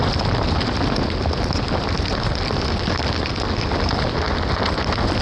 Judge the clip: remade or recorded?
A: recorded